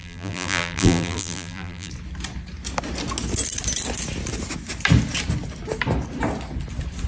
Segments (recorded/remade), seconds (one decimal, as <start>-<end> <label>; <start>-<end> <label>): 0.0-1.9 remade; 1.9-7.1 recorded